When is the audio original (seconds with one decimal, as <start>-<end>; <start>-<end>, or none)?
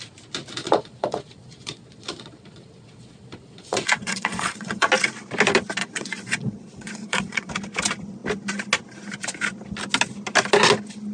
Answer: 0.0-0.6; 4.9-5.8; 7.5-11.1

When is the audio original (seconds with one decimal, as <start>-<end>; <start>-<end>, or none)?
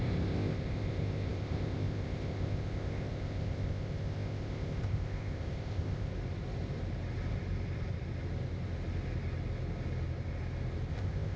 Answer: 6.1-10.9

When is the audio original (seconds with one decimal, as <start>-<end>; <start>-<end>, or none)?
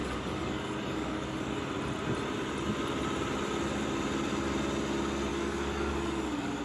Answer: 1.6-5.3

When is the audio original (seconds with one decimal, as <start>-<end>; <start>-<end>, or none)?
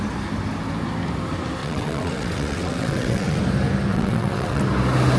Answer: 0.0-1.6; 3.4-3.9; 4.6-5.2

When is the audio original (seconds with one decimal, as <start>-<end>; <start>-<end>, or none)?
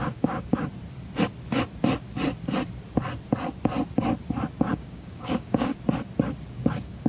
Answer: 0.7-4.7; 5.7-6.5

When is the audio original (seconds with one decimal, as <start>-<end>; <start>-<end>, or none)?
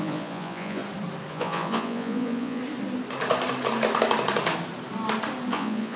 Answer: 0.8-1.3; 2.6-5.5